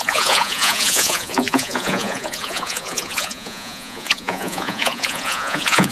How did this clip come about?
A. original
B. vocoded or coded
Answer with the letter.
B